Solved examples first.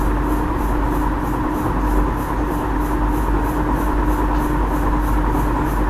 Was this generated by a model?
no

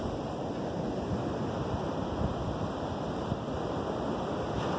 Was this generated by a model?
no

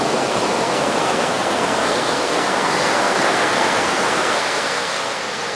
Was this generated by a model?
yes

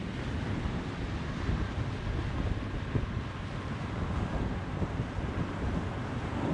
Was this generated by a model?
no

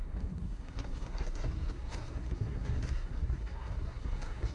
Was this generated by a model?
yes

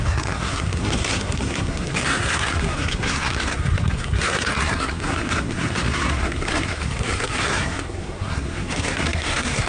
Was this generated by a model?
yes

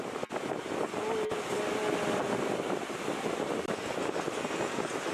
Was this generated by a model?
no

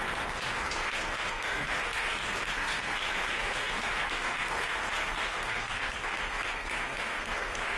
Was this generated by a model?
yes